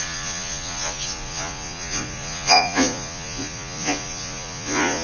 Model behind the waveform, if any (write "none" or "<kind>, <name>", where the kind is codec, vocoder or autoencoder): vocoder, Vocos